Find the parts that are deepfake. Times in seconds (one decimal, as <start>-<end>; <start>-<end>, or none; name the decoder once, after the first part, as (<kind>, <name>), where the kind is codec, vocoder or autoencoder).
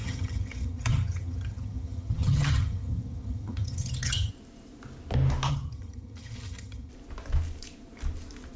0.0-4.3 (vocoder, HiFi-GAN); 5.5-6.9